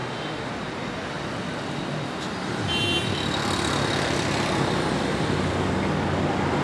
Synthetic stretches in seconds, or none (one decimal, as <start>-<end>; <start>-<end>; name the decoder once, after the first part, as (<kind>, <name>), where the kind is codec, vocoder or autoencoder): 0.0-0.5 (autoencoder, DAC-VAE)